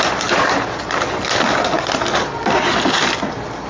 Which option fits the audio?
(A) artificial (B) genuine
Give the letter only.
B